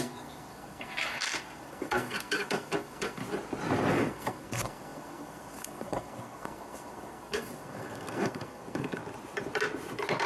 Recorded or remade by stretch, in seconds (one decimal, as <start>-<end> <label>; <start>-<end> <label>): 0.0-3.2 remade; 3.2-3.9 recorded; 3.9-9.0 remade; 9.0-10.3 recorded